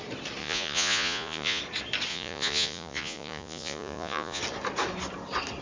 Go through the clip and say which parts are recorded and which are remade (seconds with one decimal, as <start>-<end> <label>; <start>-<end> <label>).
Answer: 0.0-0.4 recorded; 0.4-1.6 remade; 1.6-2.1 recorded; 2.1-4.4 remade; 4.4-5.6 recorded